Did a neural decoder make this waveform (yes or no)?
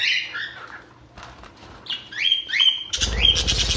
no